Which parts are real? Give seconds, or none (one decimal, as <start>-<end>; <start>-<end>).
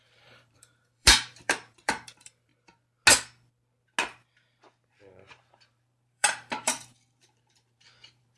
2.5-4.9